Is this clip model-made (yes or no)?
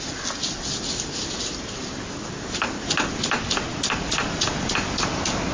no